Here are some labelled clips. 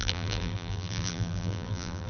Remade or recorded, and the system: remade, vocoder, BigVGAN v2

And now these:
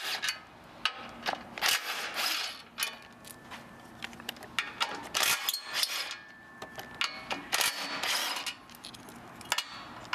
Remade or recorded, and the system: recorded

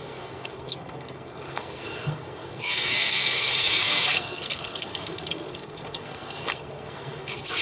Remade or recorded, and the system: remade, codec, SNAC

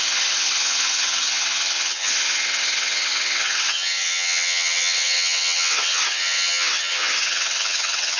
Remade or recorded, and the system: remade, vocoder, HiFi-GAN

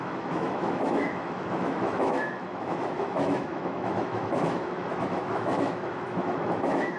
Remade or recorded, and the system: remade, autoencoder, DAC-VAE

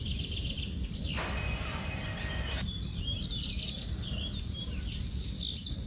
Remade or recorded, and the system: recorded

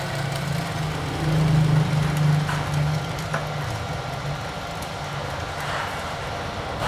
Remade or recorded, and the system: recorded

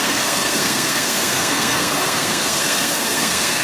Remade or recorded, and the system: remade, codec, SNAC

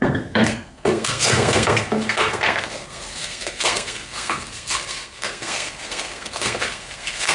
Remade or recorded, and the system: remade, codec, SNAC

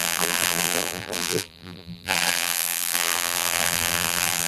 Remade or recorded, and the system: remade, vocoder, BigVGAN v2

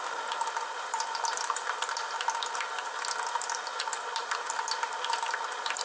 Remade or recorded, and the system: remade, vocoder, BigVGAN v2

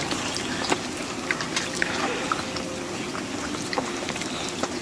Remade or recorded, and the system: recorded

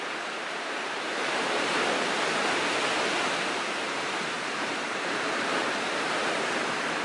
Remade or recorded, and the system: remade, vocoder, BigVGAN v2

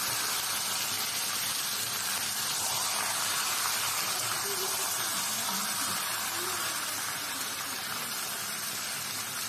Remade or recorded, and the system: remade, vocoder, BigVGAN v2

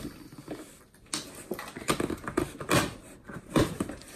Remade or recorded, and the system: remade, vocoder, BigVGAN v2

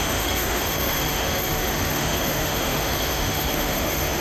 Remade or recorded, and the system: remade, autoencoder, DAC-VAE